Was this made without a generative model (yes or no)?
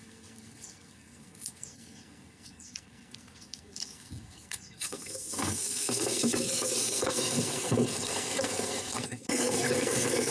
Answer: no